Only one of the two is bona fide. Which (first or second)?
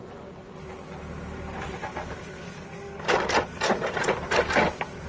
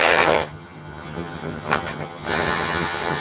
first